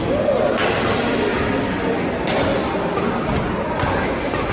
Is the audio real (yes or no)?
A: yes